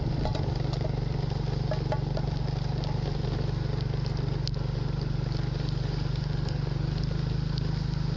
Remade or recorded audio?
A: recorded